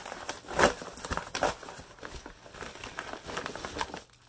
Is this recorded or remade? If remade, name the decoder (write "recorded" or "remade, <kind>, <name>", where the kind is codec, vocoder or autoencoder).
recorded